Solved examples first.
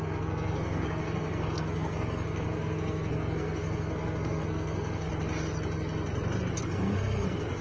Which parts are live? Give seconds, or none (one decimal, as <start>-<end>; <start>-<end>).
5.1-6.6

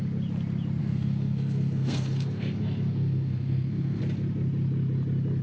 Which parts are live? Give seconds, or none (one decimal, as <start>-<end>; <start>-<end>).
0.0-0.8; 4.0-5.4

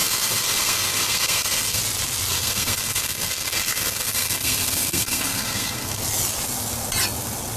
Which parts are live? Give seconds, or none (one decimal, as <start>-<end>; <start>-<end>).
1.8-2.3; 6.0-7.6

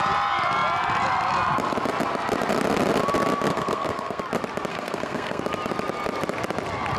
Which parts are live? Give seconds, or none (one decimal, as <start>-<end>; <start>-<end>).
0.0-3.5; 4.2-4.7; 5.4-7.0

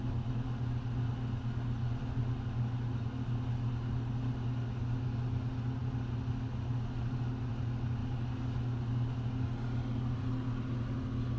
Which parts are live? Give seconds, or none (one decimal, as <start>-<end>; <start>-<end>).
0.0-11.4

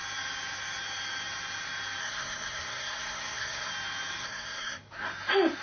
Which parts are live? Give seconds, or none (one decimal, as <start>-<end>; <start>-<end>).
0.0-2.0; 3.7-4.2; 4.9-5.6